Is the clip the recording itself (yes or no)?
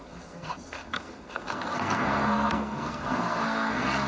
no